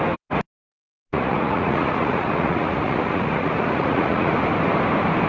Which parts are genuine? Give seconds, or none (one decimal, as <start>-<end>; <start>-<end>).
0.0-1.1; 4.3-5.3